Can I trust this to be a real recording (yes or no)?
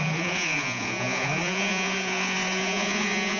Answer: no